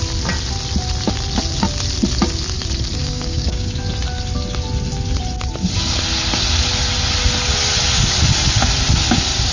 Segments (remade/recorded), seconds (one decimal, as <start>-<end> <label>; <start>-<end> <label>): 0.0-3.0 recorded; 3.0-3.7 remade; 3.7-9.5 recorded